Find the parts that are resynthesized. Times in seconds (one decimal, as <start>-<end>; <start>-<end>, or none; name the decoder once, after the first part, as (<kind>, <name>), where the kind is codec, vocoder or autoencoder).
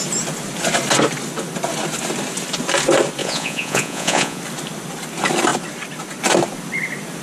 3.2-4.4 (vocoder, Vocos)